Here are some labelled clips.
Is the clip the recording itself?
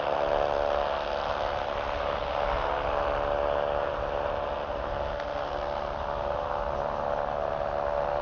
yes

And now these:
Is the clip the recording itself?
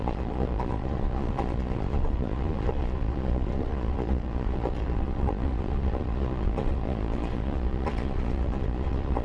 no